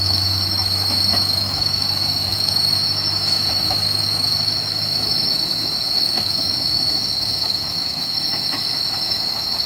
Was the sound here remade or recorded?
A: remade